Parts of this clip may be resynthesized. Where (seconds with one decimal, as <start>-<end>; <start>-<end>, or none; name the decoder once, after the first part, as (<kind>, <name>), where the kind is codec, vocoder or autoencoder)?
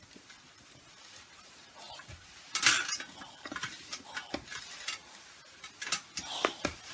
none